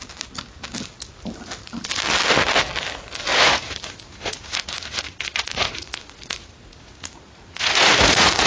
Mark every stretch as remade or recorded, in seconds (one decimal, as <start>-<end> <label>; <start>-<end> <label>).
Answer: 0.0-3.3 recorded; 3.3-8.5 remade